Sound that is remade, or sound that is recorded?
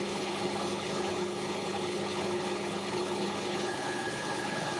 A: remade